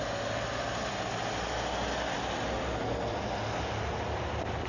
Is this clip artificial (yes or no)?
no